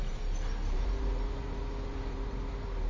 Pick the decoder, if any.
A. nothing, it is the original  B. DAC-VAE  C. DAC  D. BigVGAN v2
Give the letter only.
D